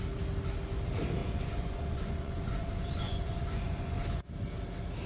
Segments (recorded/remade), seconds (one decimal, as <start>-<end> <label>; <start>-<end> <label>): 0.0-1.2 recorded; 1.2-4.3 remade; 4.3-5.1 recorded